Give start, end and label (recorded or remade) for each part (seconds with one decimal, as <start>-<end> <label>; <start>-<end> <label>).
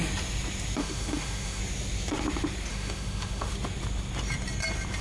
0.0-0.8 recorded; 0.8-1.6 remade; 1.6-2.7 recorded; 2.7-3.5 remade; 3.5-5.0 recorded